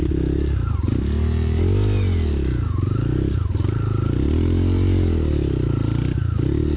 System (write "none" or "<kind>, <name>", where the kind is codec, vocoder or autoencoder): none